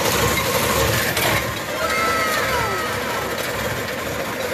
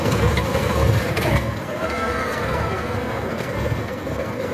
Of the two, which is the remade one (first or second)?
second